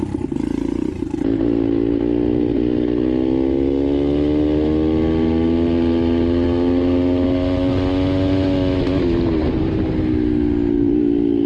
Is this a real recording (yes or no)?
yes